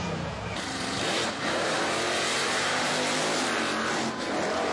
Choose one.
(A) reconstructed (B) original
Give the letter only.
A